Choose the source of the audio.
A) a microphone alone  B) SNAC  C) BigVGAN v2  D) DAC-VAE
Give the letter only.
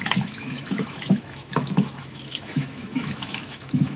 D